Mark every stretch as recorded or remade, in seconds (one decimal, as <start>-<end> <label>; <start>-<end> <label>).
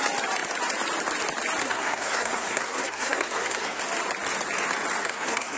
0.0-1.6 recorded; 1.6-3.8 remade; 3.8-5.0 recorded; 5.0-5.6 remade